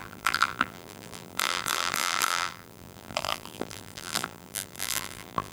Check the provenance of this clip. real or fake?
fake